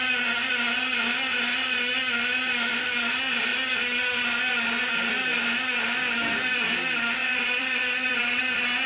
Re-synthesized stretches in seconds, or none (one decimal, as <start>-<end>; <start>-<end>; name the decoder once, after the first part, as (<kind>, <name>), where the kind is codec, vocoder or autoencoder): 7.2-8.4 (vocoder, BigVGAN v2)